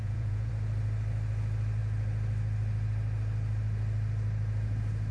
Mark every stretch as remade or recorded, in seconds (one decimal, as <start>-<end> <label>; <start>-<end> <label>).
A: 0.0-0.5 remade; 0.5-5.1 recorded